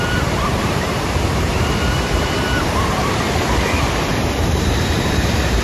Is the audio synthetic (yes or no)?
yes